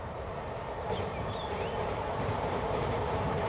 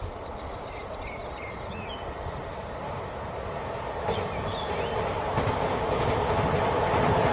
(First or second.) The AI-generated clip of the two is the first